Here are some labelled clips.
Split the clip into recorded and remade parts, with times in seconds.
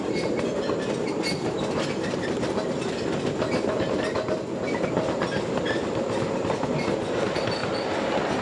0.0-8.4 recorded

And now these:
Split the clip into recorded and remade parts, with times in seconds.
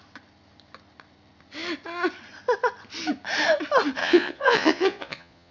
0.0-4.0 recorded; 4.0-5.5 remade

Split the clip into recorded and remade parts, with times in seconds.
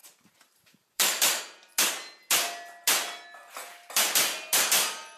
0.0-1.4 remade; 1.4-5.2 recorded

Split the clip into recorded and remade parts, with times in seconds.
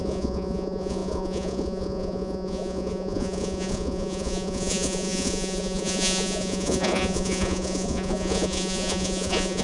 0.0-9.6 remade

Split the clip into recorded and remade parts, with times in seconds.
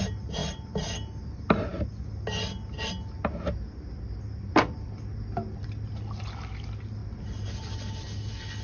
0.0-8.6 recorded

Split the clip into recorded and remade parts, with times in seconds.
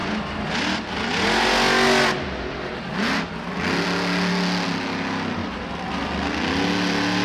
0.0-7.2 recorded